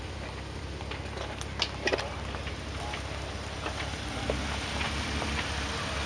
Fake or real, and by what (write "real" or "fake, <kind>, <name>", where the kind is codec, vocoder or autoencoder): real